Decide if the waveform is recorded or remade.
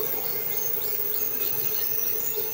recorded